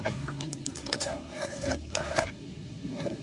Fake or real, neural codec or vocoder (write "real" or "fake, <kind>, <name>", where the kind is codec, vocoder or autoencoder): fake, codec, SNAC